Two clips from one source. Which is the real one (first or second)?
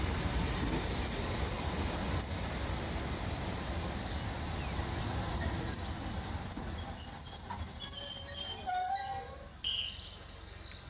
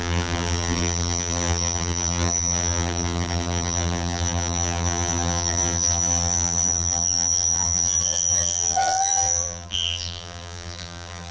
first